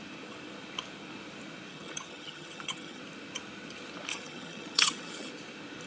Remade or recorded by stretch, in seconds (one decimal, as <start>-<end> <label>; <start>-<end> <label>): 0.0-1.7 recorded; 1.7-3.0 remade; 3.0-4.1 recorded; 4.1-5.3 remade; 5.3-5.9 recorded